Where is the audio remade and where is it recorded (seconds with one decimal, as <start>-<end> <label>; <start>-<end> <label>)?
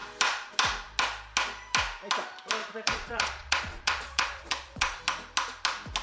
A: 0.0-2.6 recorded; 2.6-5.0 remade; 5.0-6.0 recorded